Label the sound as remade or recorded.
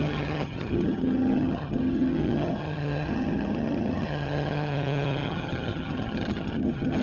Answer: remade